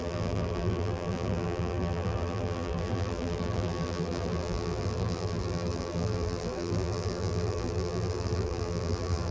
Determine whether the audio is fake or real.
fake